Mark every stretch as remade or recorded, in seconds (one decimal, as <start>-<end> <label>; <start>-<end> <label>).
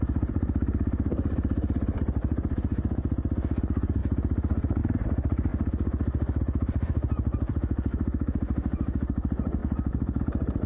0.0-2.7 remade; 2.7-3.6 recorded; 3.6-5.5 remade; 5.5-6.4 recorded; 6.4-10.7 remade